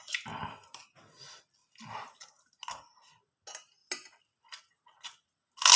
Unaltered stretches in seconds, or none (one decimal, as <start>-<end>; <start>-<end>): 0.0-5.8